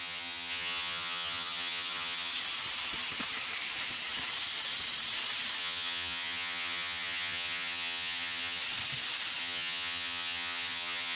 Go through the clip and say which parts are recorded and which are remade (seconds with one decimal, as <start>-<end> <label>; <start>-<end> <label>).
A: 0.0-2.3 remade; 2.3-5.6 recorded; 5.6-8.6 remade; 8.6-9.4 recorded; 9.4-11.2 remade